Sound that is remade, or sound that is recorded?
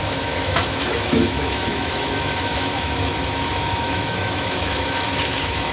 remade